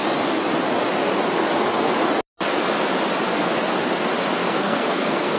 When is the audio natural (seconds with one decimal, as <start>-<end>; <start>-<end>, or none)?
0.0-4.4